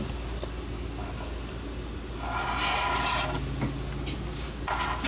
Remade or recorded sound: recorded